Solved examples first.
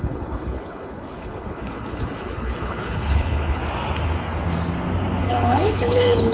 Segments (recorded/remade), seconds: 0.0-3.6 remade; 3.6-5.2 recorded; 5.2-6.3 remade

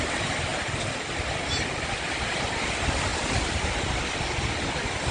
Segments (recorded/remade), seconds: 0.0-5.1 recorded

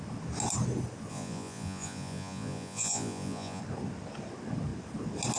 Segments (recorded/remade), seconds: 0.0-1.1 recorded; 1.1-3.6 remade; 3.6-5.4 recorded